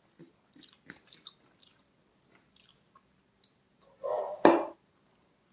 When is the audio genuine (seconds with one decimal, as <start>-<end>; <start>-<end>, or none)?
0.0-5.5